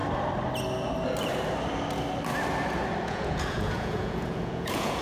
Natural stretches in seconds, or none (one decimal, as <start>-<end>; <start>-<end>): 0.0-3.0